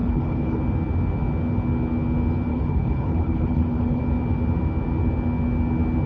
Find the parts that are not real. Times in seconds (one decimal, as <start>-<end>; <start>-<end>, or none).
0.0-0.6; 2.5-4.0

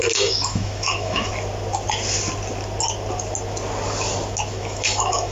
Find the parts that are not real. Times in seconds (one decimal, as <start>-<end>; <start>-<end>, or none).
0.0-1.3; 4.5-5.3

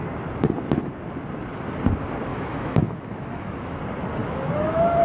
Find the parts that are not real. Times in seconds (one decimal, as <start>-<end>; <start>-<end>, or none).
2.3-3.8; 4.2-5.0

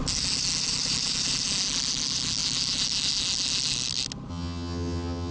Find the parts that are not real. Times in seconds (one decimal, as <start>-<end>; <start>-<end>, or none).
4.3-5.3

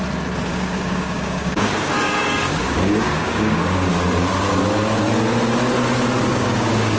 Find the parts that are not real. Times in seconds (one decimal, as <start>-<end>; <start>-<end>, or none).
0.5-3.9; 6.3-7.0